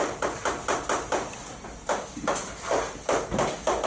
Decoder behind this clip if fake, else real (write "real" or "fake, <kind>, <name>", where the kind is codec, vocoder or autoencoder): real